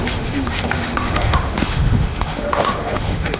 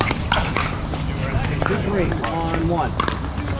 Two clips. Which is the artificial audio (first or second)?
first